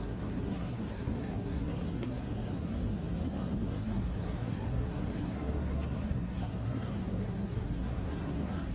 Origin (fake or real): fake